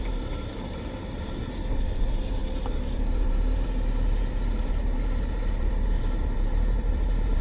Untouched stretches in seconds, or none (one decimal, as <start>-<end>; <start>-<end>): none